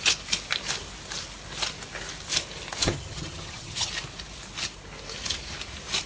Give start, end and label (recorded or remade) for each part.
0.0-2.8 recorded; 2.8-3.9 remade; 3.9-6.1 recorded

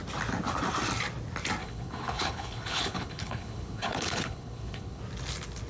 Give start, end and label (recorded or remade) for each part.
0.0-1.6 recorded; 1.6-5.0 remade; 5.0-5.7 recorded

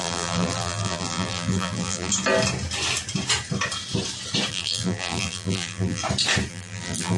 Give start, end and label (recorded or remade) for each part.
0.0-2.1 remade; 2.1-4.5 recorded; 4.5-6.0 remade; 6.0-6.5 recorded; 6.5-7.2 remade

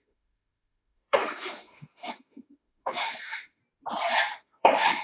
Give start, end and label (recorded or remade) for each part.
0.0-3.6 remade; 3.6-4.4 recorded; 4.4-5.0 remade

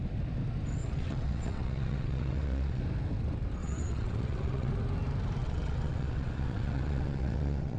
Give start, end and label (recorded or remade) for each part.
0.0-0.8 recorded; 0.8-2.8 remade; 2.8-3.6 recorded; 3.6-4.7 remade; 4.7-5.4 recorded; 5.4-7.8 remade

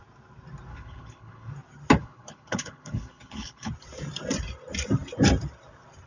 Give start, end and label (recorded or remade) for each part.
0.0-0.7 recorded; 0.7-1.5 remade; 1.5-2.0 recorded; 2.0-3.7 remade; 3.7-6.1 recorded

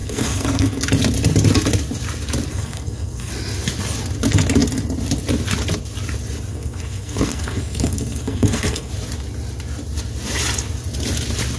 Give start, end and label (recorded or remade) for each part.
0.0-0.8 remade; 0.8-2.5 recorded; 2.5-3.3 remade; 3.3-6.5 recorded; 6.5-8.9 remade; 8.9-11.6 recorded